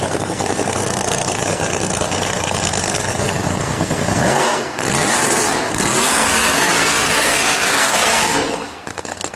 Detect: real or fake fake